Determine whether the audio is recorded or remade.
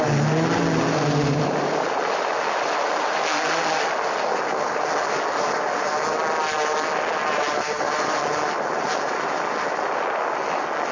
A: recorded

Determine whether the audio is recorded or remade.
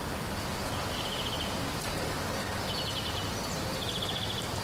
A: recorded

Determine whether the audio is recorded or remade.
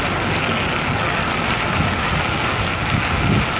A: recorded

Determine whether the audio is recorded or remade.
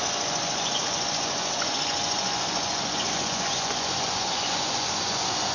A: remade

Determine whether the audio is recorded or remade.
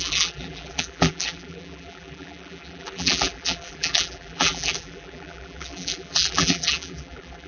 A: remade